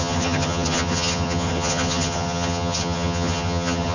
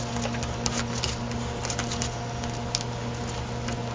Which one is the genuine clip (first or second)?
second